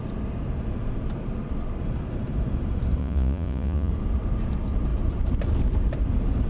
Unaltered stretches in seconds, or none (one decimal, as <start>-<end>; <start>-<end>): 0.0-3.0; 3.9-6.5